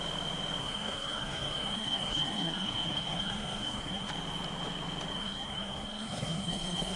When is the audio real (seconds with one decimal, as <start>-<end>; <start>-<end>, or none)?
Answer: 0.0-0.6; 4.1-5.1